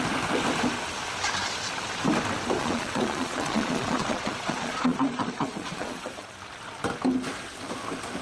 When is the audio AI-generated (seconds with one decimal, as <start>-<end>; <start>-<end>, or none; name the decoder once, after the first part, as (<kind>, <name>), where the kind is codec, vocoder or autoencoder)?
2.6-6.3 (vocoder, Vocos)